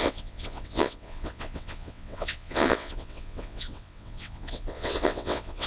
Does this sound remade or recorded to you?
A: remade